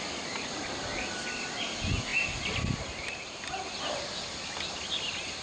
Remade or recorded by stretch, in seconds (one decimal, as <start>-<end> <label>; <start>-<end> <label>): 0.0-5.4 recorded